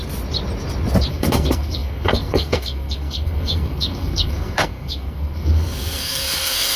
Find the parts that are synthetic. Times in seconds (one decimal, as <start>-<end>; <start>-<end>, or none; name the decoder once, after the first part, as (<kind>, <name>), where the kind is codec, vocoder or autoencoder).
1.1-6.8 (codec, SNAC)